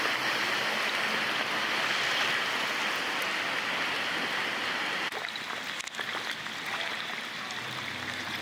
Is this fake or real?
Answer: real